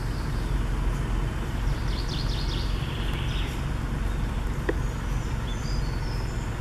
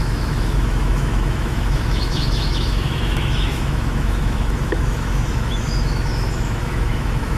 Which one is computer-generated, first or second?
second